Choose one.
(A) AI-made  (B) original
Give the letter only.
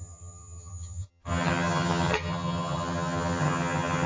A